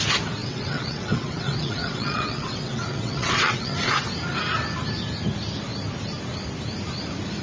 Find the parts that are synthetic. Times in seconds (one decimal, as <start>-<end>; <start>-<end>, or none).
0.4-3.9